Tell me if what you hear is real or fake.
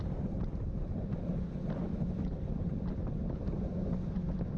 fake